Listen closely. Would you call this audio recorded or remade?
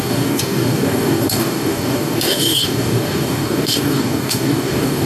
remade